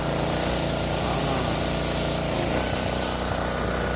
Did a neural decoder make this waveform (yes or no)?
no